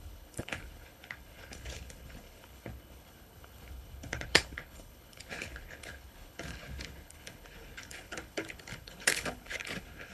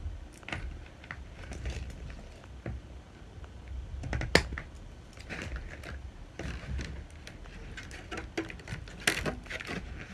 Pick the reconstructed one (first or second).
first